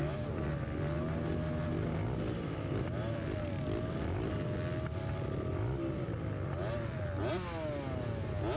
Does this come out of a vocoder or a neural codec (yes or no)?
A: no